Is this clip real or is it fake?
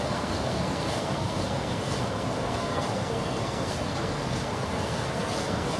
fake